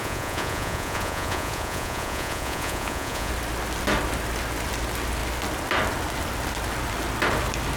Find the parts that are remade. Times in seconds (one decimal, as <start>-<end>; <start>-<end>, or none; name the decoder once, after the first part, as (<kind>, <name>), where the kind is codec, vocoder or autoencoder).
0.0-3.3 (vocoder, Vocos)